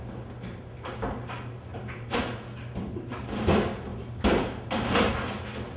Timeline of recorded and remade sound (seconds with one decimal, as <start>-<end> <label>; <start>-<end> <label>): 0.0-1.7 recorded; 1.7-2.2 remade; 2.2-3.9 recorded; 3.9-5.1 remade; 5.1-5.8 recorded